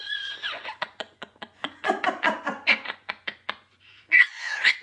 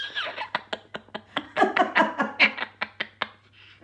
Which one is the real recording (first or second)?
second